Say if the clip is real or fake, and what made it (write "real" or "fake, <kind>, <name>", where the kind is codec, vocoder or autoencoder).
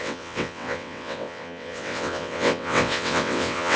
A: fake, vocoder, WaveNeXt